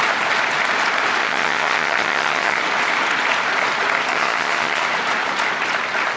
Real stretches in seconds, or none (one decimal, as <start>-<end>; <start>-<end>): 0.0-1.2; 2.6-4.1; 4.8-6.2